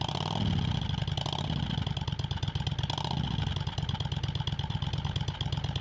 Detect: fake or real real